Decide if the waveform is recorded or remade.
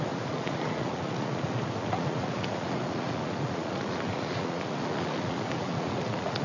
remade